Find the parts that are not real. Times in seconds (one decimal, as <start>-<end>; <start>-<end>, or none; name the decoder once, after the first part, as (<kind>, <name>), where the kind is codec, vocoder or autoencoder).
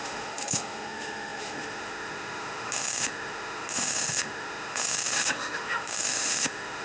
0.0-6.8 (autoencoder, DAC-VAE)